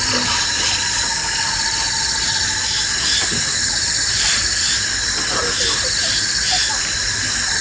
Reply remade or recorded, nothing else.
recorded